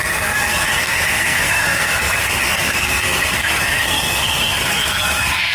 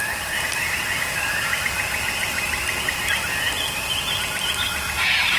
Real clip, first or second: second